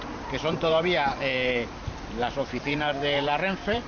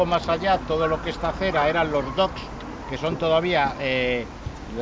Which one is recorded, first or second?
second